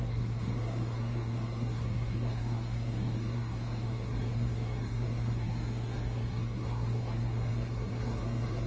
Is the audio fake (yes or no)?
yes